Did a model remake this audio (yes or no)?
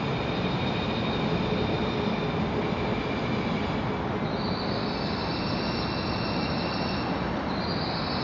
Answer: no